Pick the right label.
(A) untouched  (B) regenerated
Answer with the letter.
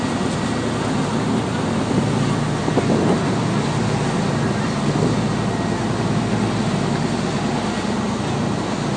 A